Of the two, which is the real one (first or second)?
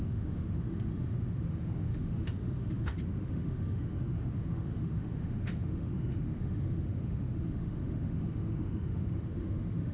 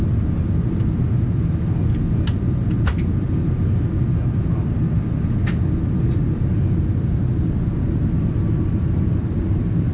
second